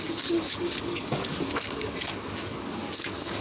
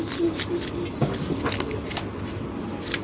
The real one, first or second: second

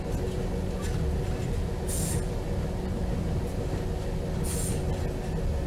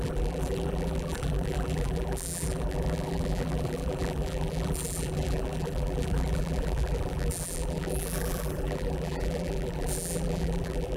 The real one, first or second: first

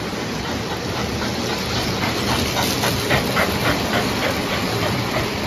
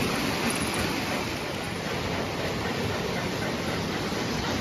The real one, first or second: first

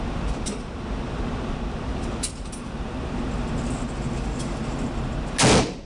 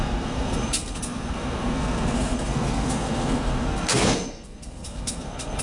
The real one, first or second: first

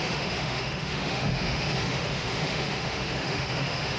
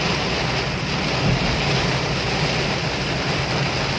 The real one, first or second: second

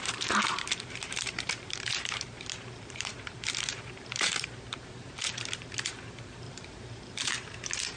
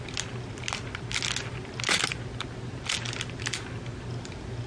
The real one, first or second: second